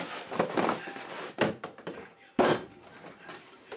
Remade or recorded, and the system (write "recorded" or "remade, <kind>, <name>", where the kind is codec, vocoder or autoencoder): remade, vocoder, BigVGAN v2